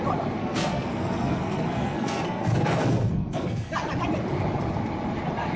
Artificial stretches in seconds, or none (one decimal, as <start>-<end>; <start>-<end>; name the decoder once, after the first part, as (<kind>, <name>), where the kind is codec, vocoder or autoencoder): 0.4-3.7 (codec, SNAC)